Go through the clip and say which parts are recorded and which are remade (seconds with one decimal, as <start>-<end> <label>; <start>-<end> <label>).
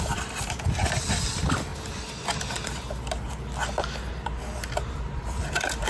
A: 0.0-1.7 remade; 1.7-5.2 recorded; 5.2-5.9 remade